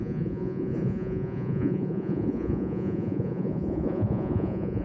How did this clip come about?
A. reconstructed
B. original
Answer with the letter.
A